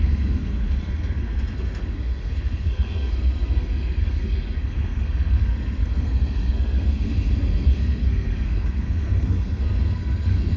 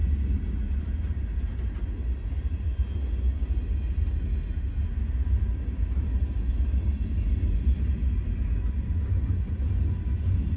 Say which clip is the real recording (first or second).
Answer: second